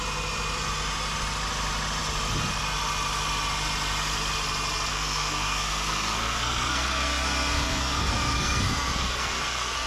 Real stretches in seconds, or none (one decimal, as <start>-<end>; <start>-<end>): 0.0-4.9